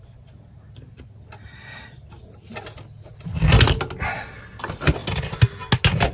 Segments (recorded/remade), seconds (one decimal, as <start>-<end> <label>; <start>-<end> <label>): 0.0-6.1 recorded